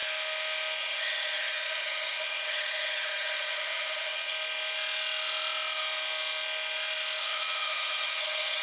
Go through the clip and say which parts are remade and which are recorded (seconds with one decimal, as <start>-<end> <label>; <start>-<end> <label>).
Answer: 0.0-0.8 recorded; 0.8-4.3 remade; 4.3-7.2 recorded; 7.2-8.6 remade